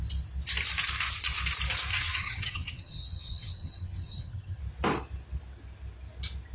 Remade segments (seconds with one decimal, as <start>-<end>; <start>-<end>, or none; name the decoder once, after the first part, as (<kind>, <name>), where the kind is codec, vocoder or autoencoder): 1.9-4.6 (vocoder, HiFi-GAN)